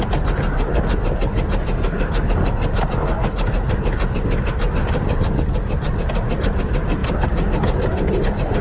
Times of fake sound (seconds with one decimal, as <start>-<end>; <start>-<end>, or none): 4.8-6.4; 7.0-8.2